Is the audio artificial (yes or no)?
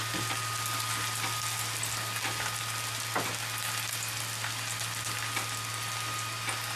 no